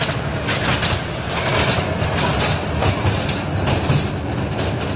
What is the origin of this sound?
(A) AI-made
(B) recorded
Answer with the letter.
B